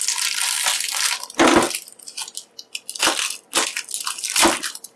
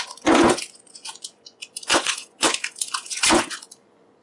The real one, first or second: first